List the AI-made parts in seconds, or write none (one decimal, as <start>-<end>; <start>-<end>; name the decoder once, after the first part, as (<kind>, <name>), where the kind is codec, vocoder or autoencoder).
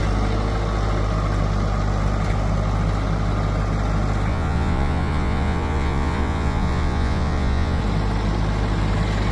4.3-7.8 (vocoder, Vocos)